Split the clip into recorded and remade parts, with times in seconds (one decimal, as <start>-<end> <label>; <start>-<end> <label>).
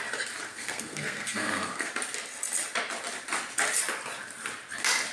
0.0-0.5 recorded; 0.5-1.9 remade; 1.9-5.1 recorded